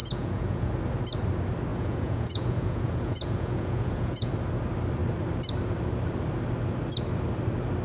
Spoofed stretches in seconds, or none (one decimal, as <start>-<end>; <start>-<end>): 0.0-0.7; 1.7-4.3